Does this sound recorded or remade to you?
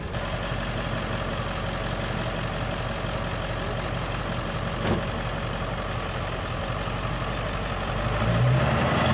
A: recorded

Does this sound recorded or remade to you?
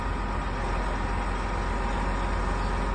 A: recorded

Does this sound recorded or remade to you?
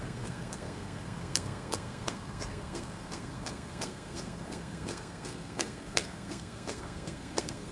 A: remade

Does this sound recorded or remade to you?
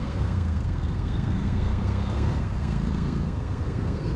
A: remade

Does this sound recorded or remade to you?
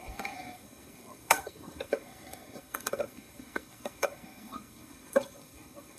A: remade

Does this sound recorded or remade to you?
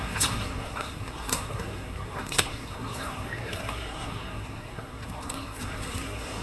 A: remade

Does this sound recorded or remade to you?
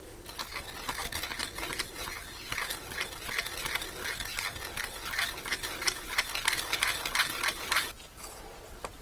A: recorded